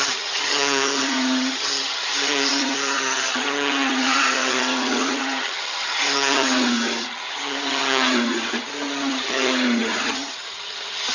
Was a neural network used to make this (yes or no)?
yes